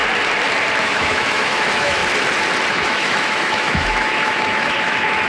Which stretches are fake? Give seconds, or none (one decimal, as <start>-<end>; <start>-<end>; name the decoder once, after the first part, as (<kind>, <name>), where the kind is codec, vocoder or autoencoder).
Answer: 0.8-2.0 (autoencoder, DAC-VAE); 2.7-5.3

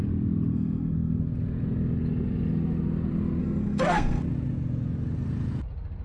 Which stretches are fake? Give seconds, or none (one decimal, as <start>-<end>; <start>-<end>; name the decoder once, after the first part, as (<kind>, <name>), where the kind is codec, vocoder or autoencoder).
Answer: 0.5-1.2 (codec, SNAC); 3.4-4.2

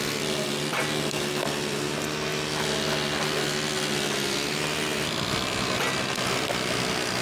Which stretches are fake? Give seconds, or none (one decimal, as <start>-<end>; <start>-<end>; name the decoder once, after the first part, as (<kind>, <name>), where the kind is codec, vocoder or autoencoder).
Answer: none

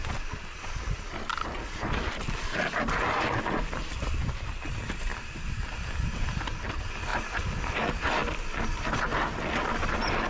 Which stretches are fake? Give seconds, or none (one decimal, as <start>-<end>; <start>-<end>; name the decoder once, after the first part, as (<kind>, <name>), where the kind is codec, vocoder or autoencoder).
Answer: none